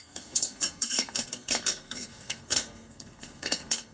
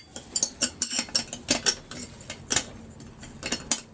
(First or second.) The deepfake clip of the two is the first